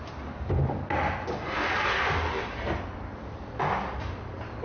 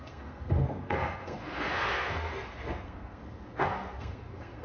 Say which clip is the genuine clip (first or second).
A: first